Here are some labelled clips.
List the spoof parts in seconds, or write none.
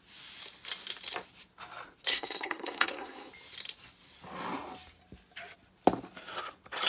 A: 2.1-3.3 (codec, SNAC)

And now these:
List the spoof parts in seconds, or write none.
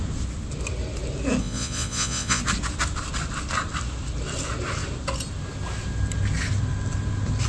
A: 1.4-2.4 (vocoder, Vocos)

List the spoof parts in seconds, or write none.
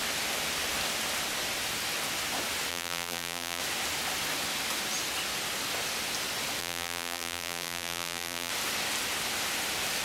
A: 2.7-3.6 (vocoder, BigVGAN v2); 6.6-8.5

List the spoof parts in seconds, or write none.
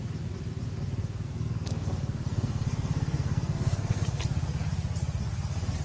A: 1.0-4.2 (codec, SNAC)